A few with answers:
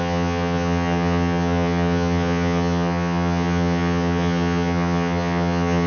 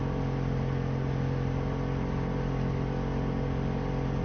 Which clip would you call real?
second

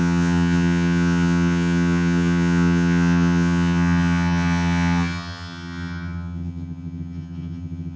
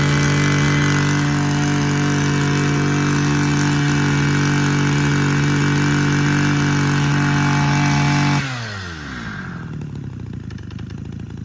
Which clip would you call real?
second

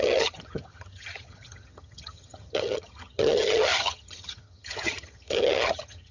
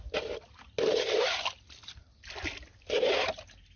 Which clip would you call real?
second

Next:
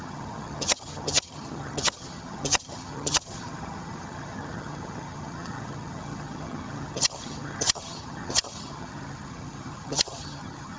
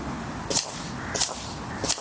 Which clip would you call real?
second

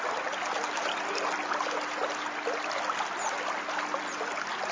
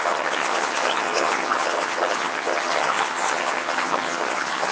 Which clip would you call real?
first